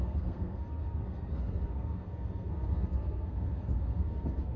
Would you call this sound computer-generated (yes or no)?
yes